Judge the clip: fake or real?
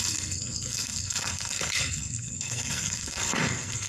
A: fake